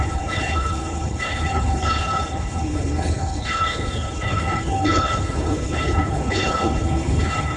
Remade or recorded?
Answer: remade